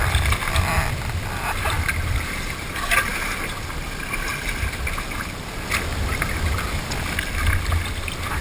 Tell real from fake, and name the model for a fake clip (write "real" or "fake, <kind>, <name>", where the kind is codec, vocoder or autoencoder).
real